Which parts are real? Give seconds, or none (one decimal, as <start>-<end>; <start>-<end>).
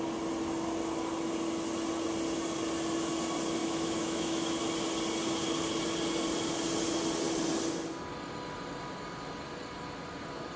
0.0-3.6; 4.6-10.6